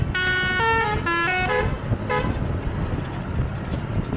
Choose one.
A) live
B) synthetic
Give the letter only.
A